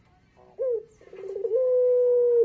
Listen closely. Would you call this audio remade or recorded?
recorded